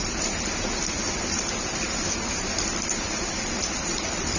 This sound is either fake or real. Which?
real